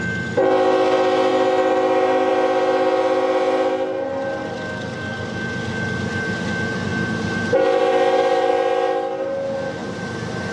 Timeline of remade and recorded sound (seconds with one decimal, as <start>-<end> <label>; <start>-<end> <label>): 0.0-6.9 recorded; 6.9-8.5 remade; 8.5-9.8 recorded; 9.8-10.5 remade